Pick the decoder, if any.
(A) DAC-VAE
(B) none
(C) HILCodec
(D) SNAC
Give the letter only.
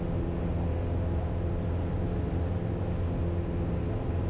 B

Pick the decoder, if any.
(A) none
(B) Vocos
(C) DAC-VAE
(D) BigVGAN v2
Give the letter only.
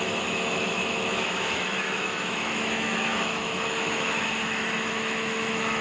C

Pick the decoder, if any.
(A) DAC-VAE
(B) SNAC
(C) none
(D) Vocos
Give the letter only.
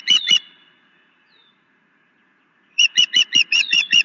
D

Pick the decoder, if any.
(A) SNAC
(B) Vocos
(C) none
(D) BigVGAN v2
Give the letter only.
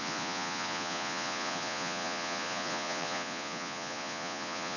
B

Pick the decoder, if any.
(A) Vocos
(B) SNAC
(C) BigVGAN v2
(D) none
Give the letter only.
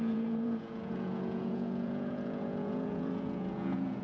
A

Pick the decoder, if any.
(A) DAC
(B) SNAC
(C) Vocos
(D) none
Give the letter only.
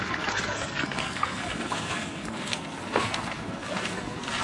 B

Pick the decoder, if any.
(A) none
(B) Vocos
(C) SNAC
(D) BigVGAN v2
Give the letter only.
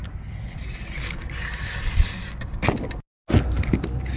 A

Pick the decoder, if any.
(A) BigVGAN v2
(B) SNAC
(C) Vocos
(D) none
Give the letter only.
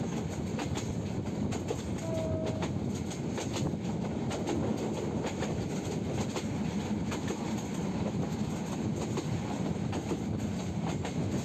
D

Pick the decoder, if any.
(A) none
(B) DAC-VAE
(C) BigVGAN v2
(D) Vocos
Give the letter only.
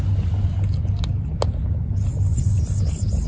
A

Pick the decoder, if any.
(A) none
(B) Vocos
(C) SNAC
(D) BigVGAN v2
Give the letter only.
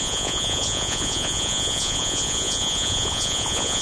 B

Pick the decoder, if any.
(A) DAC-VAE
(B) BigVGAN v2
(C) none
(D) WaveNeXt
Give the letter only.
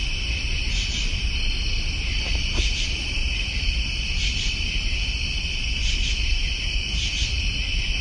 C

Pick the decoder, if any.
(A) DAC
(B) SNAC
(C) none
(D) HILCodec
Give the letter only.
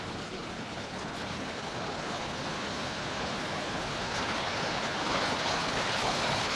D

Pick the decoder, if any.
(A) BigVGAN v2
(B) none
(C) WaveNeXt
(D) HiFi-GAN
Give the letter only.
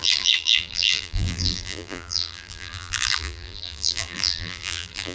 A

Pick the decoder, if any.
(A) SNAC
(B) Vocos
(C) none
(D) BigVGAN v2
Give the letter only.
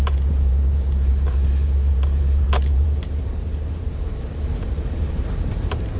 D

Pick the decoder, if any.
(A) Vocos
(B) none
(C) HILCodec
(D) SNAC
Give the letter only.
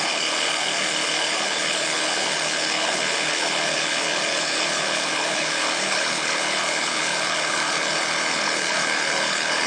C